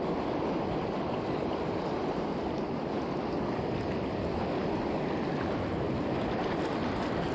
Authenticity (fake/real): real